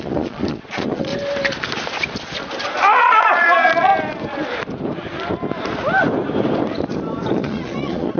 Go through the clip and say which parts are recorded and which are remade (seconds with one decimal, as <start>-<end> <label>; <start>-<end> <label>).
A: 0.0-1.1 remade; 1.1-3.0 recorded; 3.0-3.9 remade; 3.9-7.3 recorded; 7.3-8.2 remade